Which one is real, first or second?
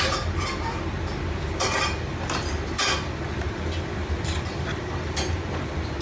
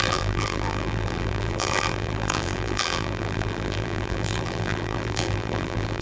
first